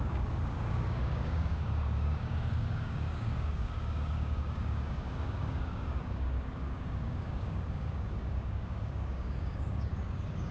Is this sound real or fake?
fake